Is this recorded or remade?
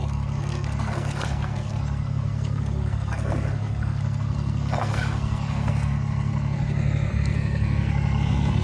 remade